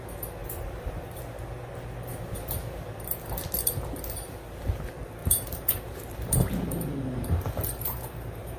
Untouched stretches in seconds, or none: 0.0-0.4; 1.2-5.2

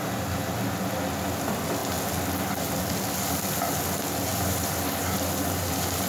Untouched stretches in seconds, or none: 0.0-4.3

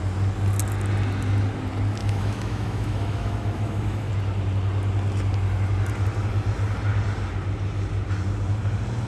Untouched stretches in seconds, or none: 0.0-2.0; 4.1-9.1

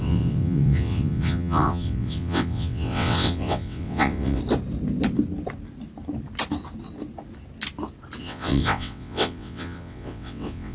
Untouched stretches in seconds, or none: 4.4-8.2